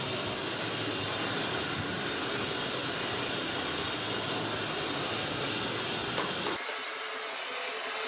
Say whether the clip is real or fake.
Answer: real